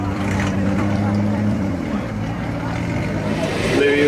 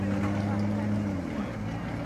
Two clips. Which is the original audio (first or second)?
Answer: second